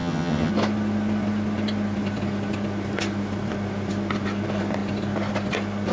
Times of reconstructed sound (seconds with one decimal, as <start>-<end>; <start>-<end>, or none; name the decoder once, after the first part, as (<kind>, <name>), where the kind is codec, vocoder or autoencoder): 0.0-0.5 (vocoder, HiFi-GAN)